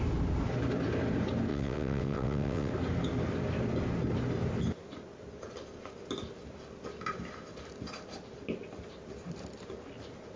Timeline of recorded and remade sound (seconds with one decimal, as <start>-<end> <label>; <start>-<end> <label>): 0.0-1.5 recorded; 1.5-2.7 remade; 2.7-10.4 recorded